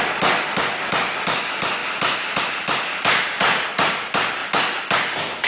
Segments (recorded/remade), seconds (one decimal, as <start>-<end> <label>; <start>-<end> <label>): 0.0-5.5 recorded